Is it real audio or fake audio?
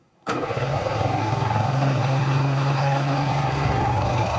fake